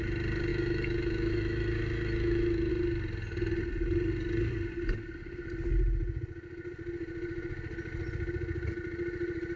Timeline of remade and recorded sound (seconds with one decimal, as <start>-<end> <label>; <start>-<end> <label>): 0.0-0.5 recorded; 0.5-2.7 remade; 2.7-9.6 recorded